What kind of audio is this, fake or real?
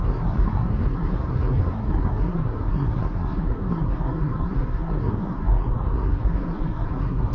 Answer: fake